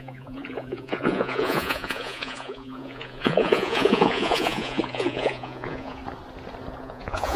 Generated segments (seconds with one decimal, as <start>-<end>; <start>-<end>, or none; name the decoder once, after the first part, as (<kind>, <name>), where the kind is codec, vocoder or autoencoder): 0.0-6.0 (vocoder, Vocos); 6.8-7.4